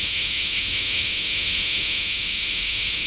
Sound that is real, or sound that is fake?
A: fake